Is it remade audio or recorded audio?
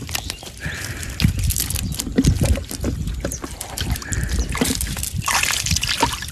recorded